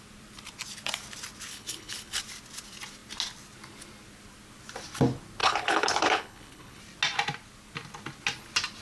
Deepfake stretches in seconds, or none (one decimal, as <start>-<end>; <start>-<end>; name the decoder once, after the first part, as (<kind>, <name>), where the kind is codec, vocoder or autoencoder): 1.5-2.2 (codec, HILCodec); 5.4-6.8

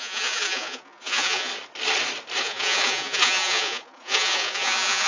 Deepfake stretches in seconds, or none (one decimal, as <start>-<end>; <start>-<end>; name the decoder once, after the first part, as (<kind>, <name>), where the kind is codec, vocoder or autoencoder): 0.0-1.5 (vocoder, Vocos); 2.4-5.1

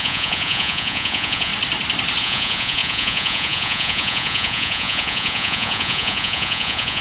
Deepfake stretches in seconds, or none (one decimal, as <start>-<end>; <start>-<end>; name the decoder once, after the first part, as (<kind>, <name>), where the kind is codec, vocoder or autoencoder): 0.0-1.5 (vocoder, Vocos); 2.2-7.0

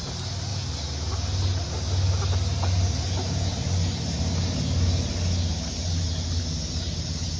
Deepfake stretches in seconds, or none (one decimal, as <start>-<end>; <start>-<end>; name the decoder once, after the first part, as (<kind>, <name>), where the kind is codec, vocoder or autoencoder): 5.5-6.1 (vocoder, BigVGAN v2)

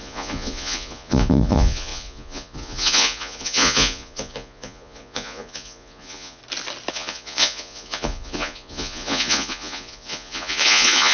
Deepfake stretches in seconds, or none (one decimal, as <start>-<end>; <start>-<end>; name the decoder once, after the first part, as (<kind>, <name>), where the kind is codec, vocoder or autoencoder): 0.0-6.4 (vocoder, Vocos); 6.9-11.1